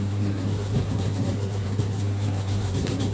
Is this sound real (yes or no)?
no